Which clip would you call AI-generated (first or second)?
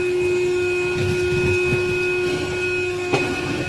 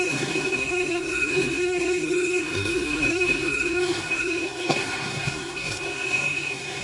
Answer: second